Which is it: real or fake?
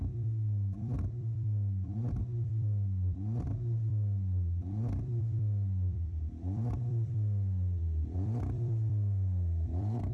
fake